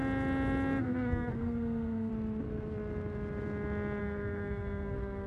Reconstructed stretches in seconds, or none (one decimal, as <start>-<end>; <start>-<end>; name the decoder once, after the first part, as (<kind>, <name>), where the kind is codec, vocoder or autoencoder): 0.8-2.1 (codec, SNAC); 4.0-5.3